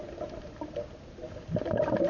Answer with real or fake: real